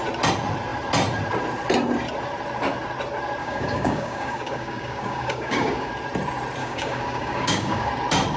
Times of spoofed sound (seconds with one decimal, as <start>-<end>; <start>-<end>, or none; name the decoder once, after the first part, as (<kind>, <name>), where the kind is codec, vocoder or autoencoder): 3.4-5.9 (codec, DAC); 6.6-7.9